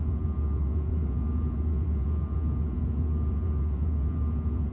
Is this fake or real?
fake